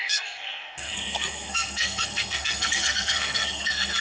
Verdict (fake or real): fake